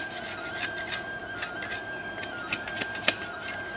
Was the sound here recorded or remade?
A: recorded